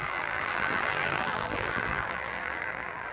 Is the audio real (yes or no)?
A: no